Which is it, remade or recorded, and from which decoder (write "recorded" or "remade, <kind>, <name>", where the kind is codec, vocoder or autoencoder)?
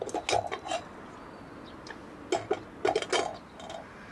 recorded